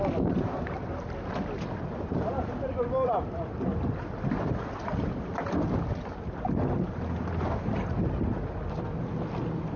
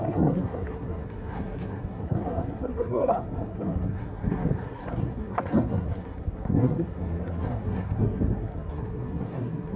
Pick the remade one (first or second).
second